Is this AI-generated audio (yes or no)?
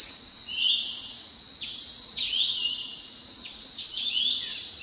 yes